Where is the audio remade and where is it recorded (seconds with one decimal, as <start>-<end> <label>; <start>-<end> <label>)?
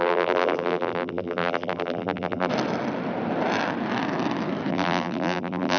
0.0-2.5 remade; 2.5-4.7 recorded; 4.7-5.8 remade